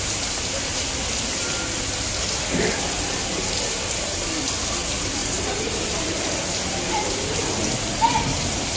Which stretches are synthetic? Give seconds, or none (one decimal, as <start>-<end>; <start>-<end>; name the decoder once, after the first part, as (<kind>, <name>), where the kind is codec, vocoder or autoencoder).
5.2-5.9 (vocoder, BigVGAN v2)